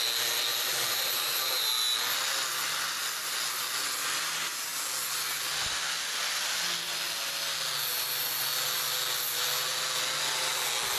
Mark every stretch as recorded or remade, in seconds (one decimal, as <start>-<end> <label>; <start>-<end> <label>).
0.0-0.5 recorded; 0.5-1.7 remade; 1.7-11.0 recorded